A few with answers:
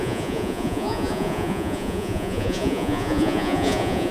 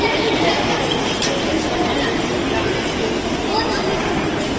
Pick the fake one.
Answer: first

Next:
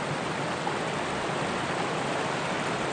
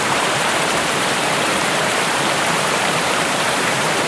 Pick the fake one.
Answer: second